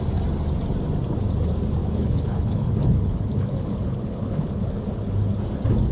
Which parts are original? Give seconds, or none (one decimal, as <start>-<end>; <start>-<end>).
0.0-1.8; 4.7-5.9